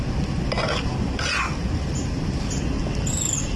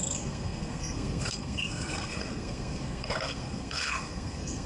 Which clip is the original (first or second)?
first